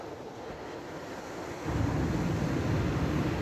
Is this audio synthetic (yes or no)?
no